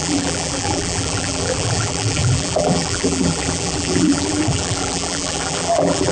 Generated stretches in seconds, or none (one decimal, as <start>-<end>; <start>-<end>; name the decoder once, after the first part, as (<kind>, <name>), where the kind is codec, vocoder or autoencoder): 0.0-6.1 (vocoder, BigVGAN v2)